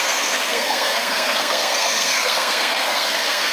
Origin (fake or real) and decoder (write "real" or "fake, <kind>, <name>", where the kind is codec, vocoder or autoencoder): fake, codec, SNAC